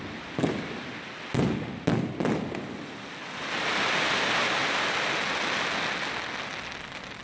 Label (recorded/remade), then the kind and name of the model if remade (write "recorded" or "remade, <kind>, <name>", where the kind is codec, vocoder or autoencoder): recorded